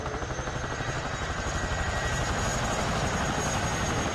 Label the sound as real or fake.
real